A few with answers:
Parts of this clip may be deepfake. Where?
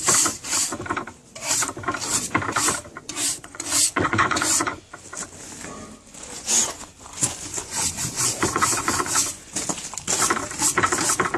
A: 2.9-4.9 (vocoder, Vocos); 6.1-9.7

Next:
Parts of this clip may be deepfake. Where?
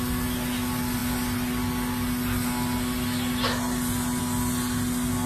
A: none